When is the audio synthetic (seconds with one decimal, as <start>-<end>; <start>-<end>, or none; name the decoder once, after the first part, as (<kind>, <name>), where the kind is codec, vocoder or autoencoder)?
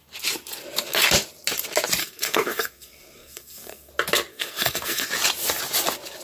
2.0-3.9 (codec, SNAC); 4.3-5.1